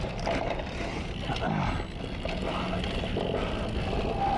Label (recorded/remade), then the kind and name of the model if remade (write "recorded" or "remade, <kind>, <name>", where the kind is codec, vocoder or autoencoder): recorded